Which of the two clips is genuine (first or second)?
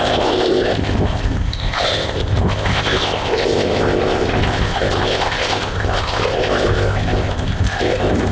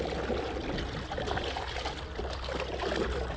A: second